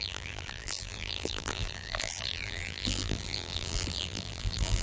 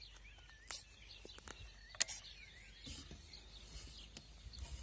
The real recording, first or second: second